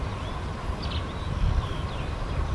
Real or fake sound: real